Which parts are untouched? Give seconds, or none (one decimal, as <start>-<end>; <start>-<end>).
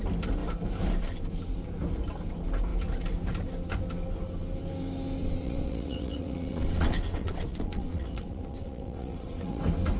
0.0-5.2; 9.6-10.0